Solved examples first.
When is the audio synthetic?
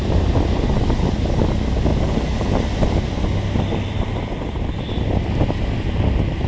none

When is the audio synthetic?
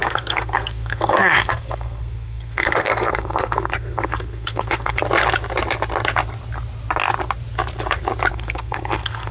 0.0-5.0 (codec, SNAC); 8.3-9.3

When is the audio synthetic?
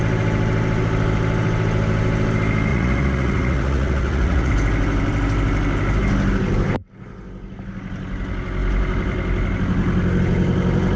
2.7-4.5 (vocoder, Vocos)